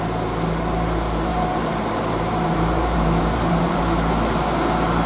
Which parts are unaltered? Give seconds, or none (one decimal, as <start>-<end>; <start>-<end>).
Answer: 0.0-1.3; 3.8-5.1